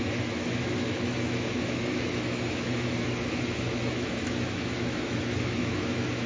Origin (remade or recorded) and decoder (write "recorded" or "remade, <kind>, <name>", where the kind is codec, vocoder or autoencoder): remade, autoencoder, DAC-VAE